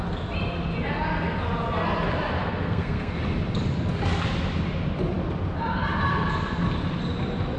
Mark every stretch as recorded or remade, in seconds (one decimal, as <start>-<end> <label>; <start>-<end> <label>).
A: 0.0-2.4 recorded; 2.4-3.2 remade; 3.2-7.6 recorded